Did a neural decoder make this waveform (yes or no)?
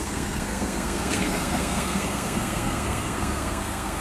yes